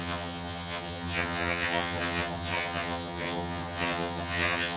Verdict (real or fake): fake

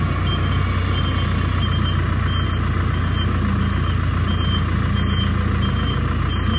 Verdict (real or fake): real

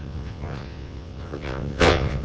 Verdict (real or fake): fake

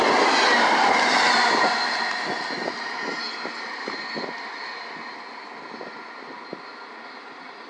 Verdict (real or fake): real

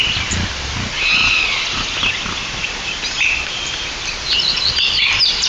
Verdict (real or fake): real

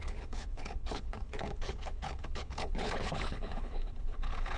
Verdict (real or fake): fake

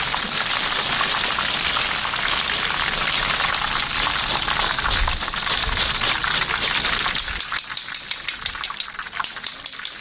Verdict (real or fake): real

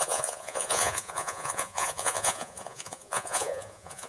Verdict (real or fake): fake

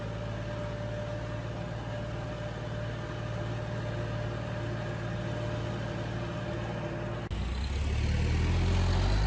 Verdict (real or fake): real